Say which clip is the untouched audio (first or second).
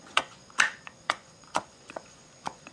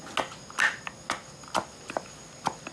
second